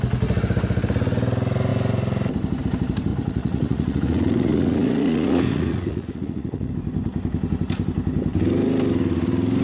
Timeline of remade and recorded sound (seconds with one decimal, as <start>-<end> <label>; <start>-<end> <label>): 0.0-3.1 recorded; 3.1-6.7 remade; 6.7-9.6 recorded